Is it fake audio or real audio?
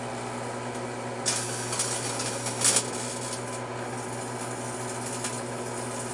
real